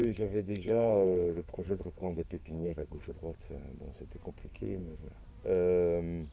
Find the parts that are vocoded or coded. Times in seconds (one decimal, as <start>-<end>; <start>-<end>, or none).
0.0-3.1; 4.4-5.1